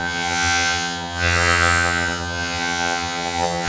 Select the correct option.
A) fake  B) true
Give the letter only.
A